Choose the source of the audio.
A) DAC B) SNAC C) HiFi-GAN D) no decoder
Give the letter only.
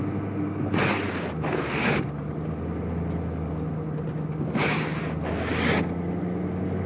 D